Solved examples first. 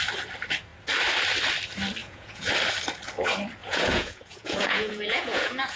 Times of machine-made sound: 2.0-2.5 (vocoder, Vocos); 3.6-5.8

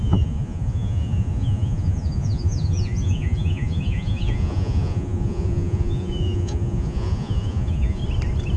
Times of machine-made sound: 0.0-8.0 (vocoder, Vocos)

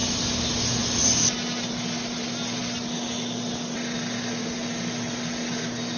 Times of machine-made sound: none